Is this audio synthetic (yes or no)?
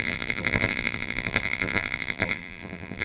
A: yes